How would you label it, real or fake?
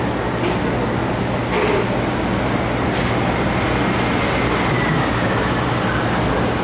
real